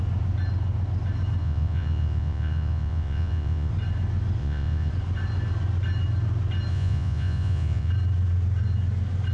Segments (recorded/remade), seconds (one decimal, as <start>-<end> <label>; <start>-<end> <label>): 0.0-1.4 recorded; 1.4-3.7 remade; 3.7-4.4 recorded; 4.4-4.9 remade; 4.9-6.7 recorded; 6.7-7.9 remade; 7.9-9.3 recorded